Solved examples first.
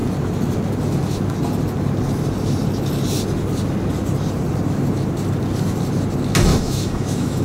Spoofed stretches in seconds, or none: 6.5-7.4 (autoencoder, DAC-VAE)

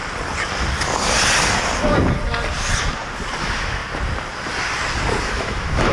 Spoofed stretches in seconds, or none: 3.4-3.8 (autoencoder, DAC-VAE); 5.2-5.9

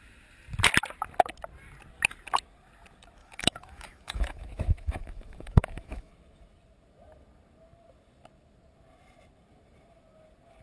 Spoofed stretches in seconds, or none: 3.2-6.1 (autoencoder, DAC-VAE)

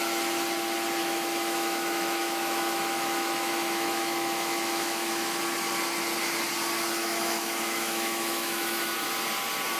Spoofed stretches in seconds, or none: 1.0-5.4 (autoencoder, DAC-VAE); 7.0-8.9

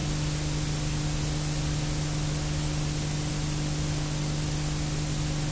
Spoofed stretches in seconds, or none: none

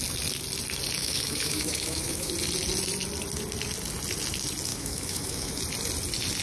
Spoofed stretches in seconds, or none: 1.0-2.3 (autoencoder, DAC-VAE); 4.7-5.6

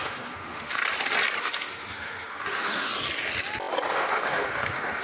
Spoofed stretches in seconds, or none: 0.0-0.8 (autoencoder, DAC-VAE); 1.4-2.9; 3.9-5.0